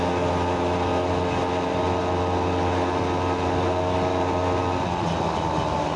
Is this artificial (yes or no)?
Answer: no